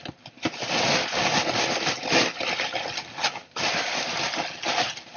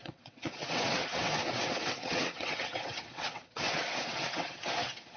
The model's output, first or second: second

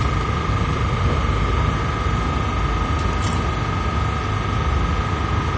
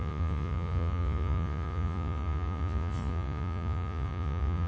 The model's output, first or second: second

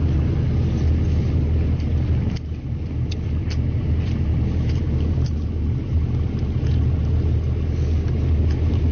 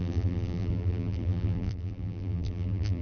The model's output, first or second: second